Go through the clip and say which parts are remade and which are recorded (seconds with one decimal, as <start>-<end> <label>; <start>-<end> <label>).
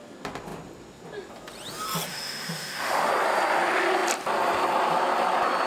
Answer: 0.0-2.1 recorded; 2.1-3.1 remade; 3.1-5.7 recorded